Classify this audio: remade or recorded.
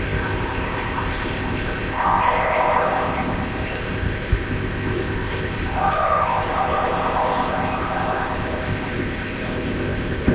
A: remade